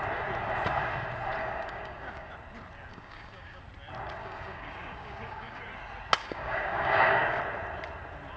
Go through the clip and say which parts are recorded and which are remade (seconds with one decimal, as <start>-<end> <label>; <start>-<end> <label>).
0.0-1.4 recorded; 1.4-2.3 remade; 2.3-2.9 recorded; 2.9-3.6 remade; 3.6-4.2 recorded; 4.2-5.6 remade; 5.6-6.2 recorded; 6.2-7.4 remade; 7.4-8.4 recorded